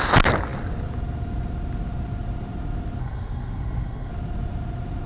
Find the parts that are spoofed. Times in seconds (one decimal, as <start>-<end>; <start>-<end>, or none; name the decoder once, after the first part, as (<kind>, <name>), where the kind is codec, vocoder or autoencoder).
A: 3.0-4.1 (codec, SNAC)